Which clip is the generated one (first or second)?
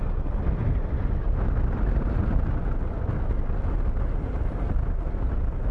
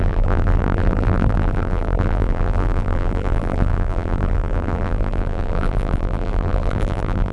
second